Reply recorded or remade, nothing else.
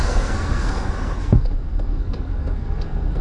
remade